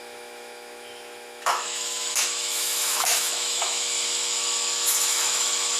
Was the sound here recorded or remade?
remade